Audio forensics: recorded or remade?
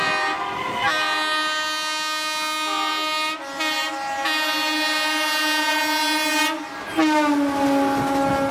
recorded